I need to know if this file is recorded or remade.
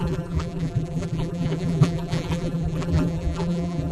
remade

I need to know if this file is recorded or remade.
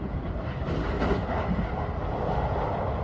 remade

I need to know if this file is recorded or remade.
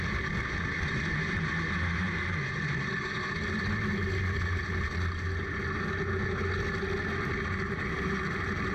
recorded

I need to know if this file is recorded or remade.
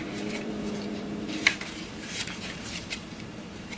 remade